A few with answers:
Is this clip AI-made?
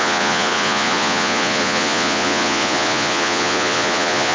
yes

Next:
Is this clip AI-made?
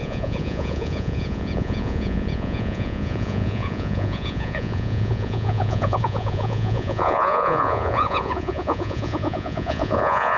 yes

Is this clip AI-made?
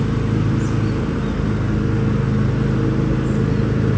no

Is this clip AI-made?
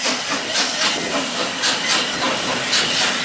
no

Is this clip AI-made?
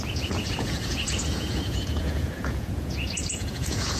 yes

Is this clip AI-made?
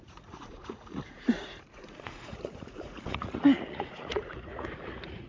yes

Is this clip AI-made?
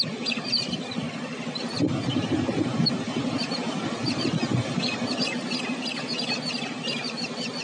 no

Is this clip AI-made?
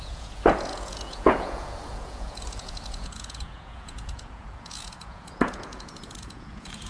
yes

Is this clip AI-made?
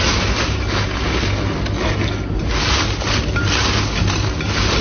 no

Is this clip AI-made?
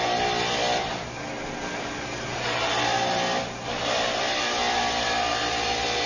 no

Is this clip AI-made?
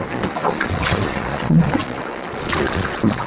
yes